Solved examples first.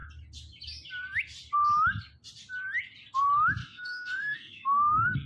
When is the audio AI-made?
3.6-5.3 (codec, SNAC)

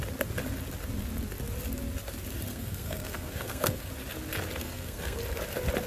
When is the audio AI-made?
2.5-3.9 (codec, SNAC); 4.6-5.2